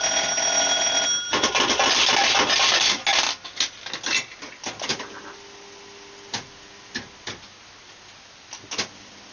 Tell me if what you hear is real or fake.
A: real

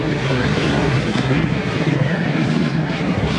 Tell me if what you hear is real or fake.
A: fake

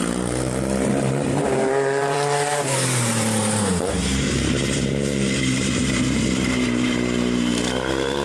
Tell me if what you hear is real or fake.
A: fake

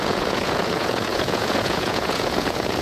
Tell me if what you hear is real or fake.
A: fake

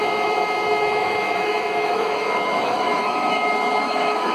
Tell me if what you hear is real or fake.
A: fake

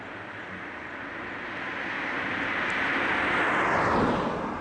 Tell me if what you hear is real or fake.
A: real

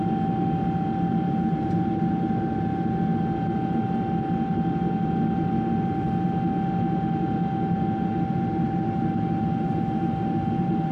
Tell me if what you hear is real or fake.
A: real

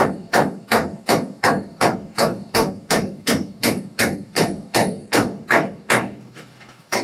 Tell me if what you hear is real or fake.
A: fake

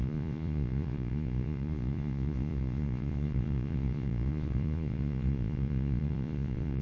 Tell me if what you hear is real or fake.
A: fake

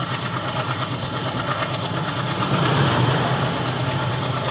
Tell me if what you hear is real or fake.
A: real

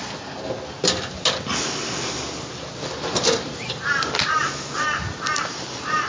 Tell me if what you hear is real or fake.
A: real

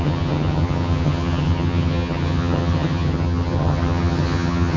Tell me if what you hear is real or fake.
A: fake